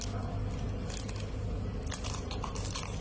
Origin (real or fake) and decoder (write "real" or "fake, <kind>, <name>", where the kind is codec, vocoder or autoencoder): real